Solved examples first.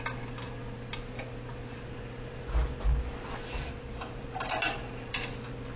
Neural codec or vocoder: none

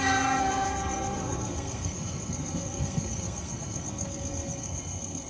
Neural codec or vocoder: codec, SNAC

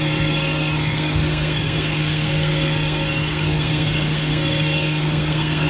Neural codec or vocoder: codec, SNAC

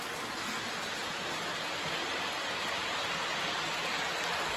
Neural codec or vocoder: none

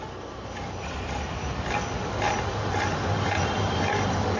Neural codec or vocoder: none